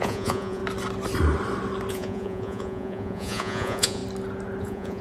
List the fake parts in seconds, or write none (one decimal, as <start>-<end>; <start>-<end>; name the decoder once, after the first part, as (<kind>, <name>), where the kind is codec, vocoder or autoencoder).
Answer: 0.0-0.6 (vocoder, Vocos); 1.9-4.0; 4.6-5.0